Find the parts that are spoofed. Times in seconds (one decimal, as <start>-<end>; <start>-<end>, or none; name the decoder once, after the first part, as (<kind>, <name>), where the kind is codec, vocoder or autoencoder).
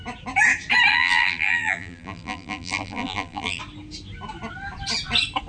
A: 0.9-3.6 (vocoder, BigVGAN v2)